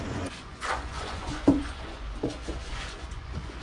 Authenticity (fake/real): fake